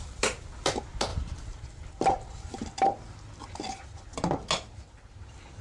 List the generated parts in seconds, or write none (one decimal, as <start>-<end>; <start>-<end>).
1.1-4.0